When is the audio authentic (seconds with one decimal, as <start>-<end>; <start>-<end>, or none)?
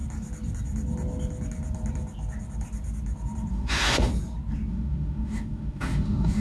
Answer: 0.0-3.5; 4.1-4.7